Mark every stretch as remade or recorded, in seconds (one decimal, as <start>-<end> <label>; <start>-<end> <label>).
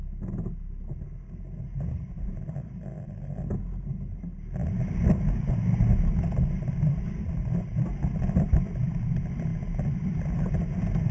0.0-11.1 recorded